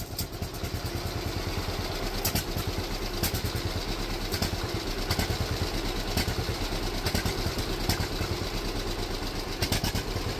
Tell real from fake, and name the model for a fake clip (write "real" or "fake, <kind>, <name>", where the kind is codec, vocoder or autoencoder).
real